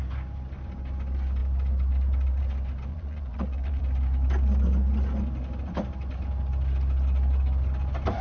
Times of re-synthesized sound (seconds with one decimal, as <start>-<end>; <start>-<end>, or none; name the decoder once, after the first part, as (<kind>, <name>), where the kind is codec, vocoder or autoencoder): 2.9-3.8 (vocoder, Vocos)